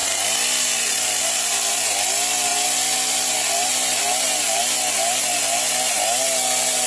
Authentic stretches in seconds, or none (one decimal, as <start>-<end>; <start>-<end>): 0.0-6.9